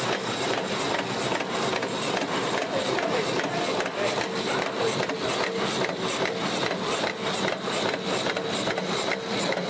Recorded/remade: recorded